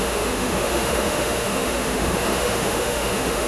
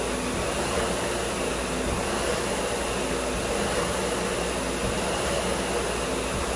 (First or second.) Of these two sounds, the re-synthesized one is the first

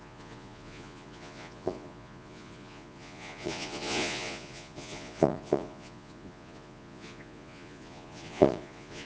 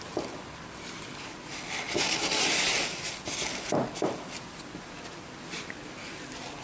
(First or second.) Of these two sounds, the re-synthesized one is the first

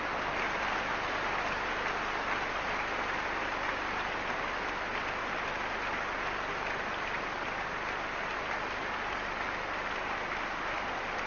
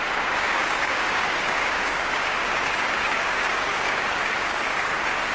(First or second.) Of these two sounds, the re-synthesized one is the second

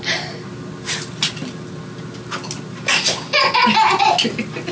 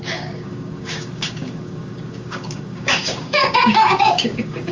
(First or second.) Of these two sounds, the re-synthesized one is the second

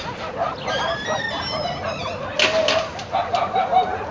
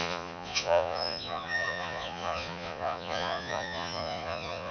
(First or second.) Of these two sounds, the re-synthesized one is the second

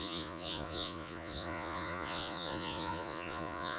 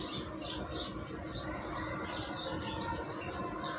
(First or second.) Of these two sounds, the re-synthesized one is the first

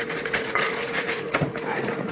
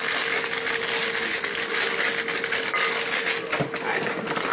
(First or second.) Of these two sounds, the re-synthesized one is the first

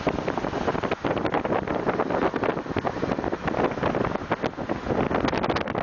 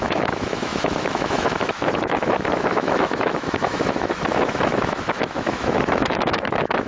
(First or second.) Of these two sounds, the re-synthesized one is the second